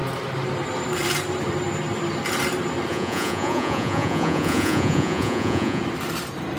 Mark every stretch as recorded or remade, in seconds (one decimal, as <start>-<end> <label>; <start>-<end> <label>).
0.0-2.9 recorded; 2.9-5.8 remade; 5.8-6.6 recorded